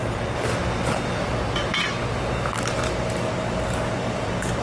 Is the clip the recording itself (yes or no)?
yes